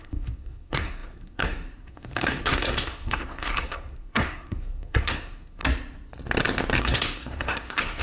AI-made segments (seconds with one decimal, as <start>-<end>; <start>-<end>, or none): 0.0-5.6; 6.8-8.0